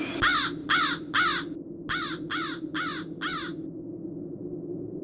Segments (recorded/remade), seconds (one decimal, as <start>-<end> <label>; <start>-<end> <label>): 0.0-5.0 recorded